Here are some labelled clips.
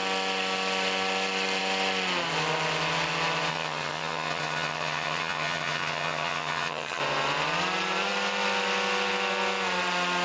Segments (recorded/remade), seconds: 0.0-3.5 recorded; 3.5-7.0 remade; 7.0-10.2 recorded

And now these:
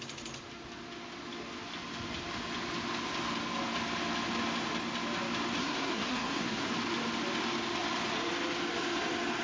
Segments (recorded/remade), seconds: 0.0-5.6 recorded; 5.6-6.7 remade; 6.7-9.4 recorded